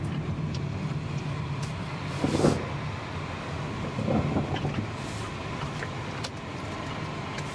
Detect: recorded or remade recorded